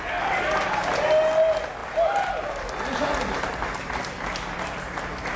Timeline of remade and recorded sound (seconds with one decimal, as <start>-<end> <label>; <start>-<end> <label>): 0.0-5.4 recorded